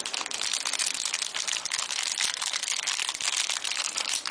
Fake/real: fake